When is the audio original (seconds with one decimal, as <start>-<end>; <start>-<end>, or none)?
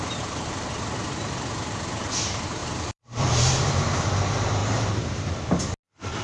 0.0-2.6; 3.7-4.6; 5.3-6.2